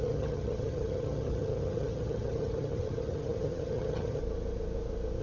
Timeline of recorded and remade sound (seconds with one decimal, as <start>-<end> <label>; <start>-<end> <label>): 0.0-4.2 remade; 4.2-5.2 recorded